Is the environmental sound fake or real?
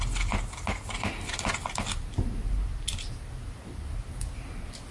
real